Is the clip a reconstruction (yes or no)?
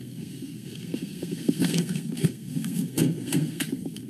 yes